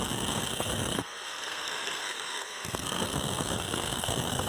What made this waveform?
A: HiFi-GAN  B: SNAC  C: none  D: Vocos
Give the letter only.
B